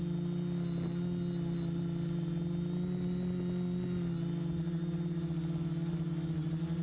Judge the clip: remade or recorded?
recorded